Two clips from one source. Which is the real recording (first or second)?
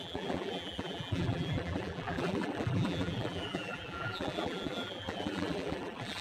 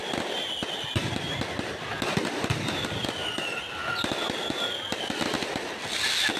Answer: second